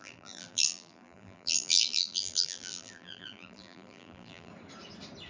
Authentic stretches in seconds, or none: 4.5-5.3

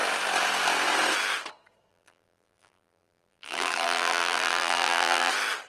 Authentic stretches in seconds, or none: 0.0-1.9; 5.3-5.7

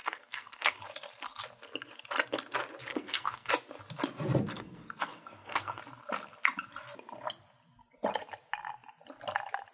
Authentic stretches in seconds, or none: 0.8-2.9; 3.5-4.5; 5.8-9.7

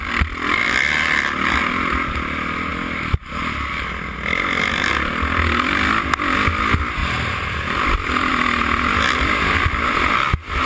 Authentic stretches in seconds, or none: 0.0-7.0; 8.3-10.7

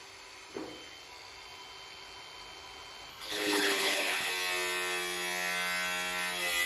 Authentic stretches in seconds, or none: 0.0-3.1; 4.3-6.7